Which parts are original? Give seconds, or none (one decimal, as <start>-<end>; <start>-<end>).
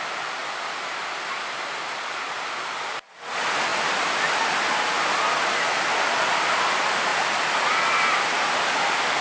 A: 0.0-9.2